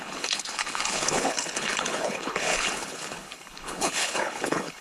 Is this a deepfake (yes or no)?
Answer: yes